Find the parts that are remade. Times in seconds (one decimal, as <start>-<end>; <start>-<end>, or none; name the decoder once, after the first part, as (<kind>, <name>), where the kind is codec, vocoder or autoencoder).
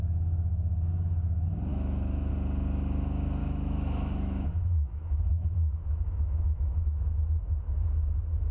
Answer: 1.7-2.3 (autoencoder, DAC-VAE); 3.4-7.0